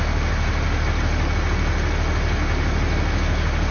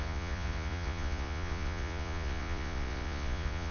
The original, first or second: first